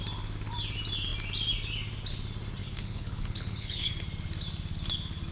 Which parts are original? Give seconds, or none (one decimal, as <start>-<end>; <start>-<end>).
0.0-2.6; 3.9-5.3